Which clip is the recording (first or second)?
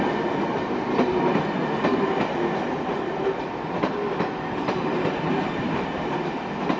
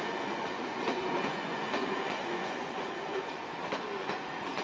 first